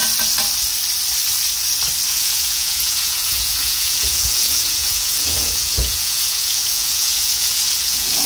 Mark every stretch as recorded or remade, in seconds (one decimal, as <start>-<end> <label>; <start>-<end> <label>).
0.0-2.1 recorded; 2.1-8.3 remade